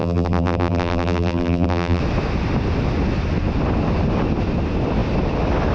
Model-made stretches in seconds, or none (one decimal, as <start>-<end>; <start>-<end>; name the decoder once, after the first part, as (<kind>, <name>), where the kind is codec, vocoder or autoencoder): 0.0-2.0 (vocoder, BigVGAN v2)